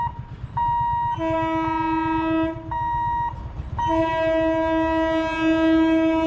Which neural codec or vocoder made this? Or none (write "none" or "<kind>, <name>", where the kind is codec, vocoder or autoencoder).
none